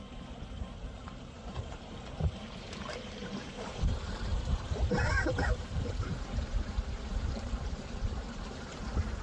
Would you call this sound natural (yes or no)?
no